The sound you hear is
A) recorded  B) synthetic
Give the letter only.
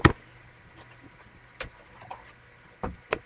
A